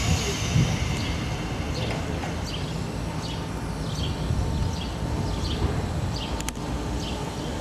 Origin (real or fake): real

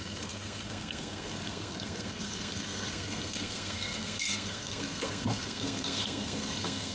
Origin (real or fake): fake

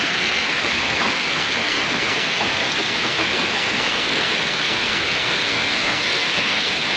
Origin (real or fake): fake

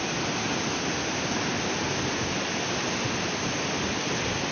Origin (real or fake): real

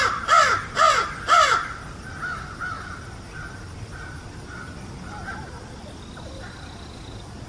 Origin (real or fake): real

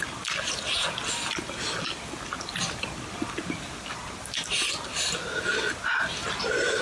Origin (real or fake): real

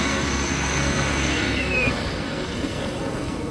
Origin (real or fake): fake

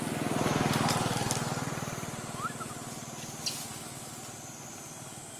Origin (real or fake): real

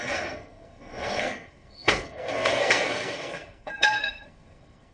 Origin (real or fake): fake